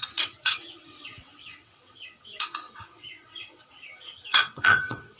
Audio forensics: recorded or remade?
remade